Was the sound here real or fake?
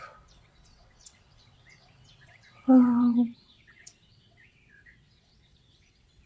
fake